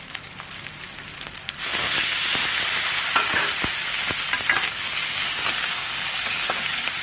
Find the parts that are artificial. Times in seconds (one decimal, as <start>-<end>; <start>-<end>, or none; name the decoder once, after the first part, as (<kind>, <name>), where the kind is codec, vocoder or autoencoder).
0.0-1.7 (vocoder, BigVGAN v2); 5.9-7.0